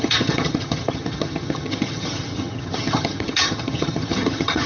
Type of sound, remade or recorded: remade